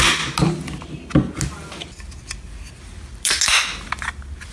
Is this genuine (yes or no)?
yes